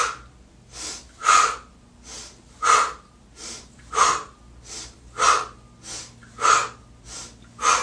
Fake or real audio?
real